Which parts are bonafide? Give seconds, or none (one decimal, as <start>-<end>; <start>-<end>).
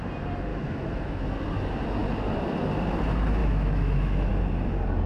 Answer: 0.0-0.5; 1.2-3.4; 4.3-5.1